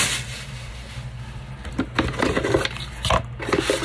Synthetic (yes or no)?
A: no